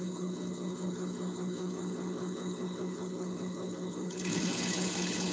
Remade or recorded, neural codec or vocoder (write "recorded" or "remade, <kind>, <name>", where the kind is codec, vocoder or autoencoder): remade, codec, HILCodec